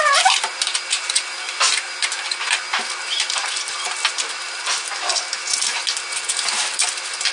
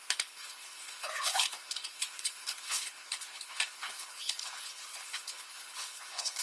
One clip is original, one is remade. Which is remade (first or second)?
second